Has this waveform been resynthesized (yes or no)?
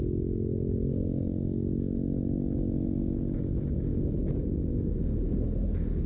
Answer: no